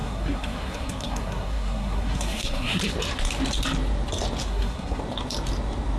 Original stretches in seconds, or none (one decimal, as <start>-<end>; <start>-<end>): 2.8-4.4; 5.0-6.0